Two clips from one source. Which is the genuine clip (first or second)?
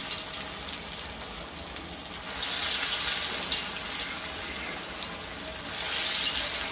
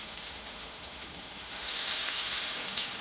first